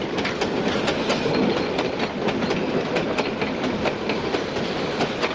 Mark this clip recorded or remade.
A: recorded